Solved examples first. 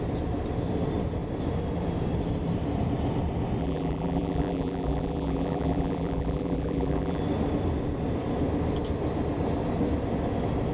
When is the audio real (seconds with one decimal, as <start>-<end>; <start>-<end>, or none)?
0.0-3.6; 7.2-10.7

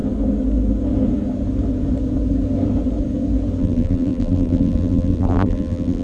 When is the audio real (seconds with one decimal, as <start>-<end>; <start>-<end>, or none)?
0.0-3.6

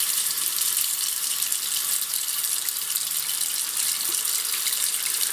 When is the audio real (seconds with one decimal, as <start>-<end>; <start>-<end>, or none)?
1.5-2.0; 2.4-4.7

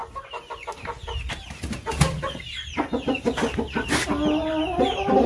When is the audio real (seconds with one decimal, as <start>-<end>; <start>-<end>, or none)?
0.0-5.3